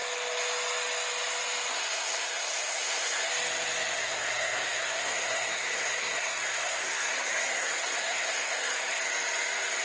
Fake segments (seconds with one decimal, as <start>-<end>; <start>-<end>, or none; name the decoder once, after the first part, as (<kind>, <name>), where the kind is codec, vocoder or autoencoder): 1.7-3.3 (codec, SNAC); 4.0-9.0